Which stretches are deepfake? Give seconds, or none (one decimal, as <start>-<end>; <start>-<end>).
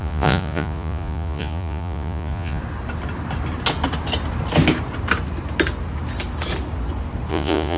0.0-2.6; 7.3-7.8